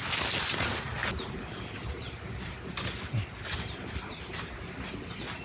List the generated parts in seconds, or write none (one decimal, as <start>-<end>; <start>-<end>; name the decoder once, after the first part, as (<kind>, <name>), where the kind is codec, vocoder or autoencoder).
none